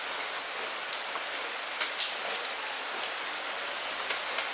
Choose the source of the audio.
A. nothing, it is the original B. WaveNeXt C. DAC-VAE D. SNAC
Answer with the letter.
A